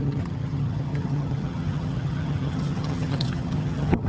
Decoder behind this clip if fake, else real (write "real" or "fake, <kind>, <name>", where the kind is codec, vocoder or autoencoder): fake, vocoder, HiFi-GAN